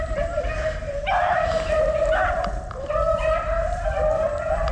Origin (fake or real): fake